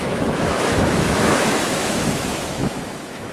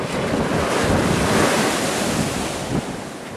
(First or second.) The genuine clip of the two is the second